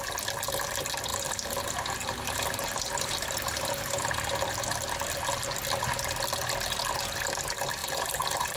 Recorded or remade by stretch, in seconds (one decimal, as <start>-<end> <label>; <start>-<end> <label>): 0.0-1.1 recorded; 1.1-4.1 remade; 4.1-7.8 recorded; 7.8-8.6 remade